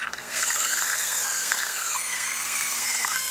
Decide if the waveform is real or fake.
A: fake